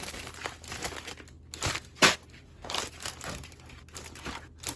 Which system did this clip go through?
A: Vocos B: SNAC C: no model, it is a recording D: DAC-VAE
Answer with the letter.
C